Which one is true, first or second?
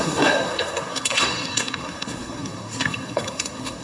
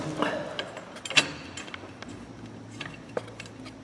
second